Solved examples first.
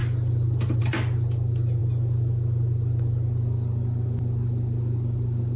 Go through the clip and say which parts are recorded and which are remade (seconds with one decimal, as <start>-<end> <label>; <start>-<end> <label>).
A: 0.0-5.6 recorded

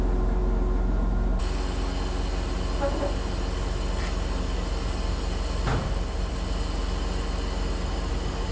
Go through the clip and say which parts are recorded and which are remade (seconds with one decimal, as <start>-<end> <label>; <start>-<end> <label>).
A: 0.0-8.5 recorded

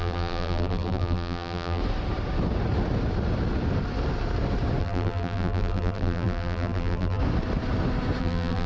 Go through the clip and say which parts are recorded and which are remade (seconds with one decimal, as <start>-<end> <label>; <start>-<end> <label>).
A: 0.0-1.8 remade; 1.8-4.8 recorded; 4.8-7.2 remade; 7.2-8.2 recorded; 8.2-8.7 remade